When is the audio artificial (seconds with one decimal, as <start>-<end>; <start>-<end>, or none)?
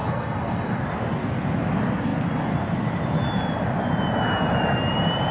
0.0-0.8